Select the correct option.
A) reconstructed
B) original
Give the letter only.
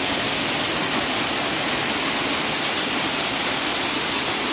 B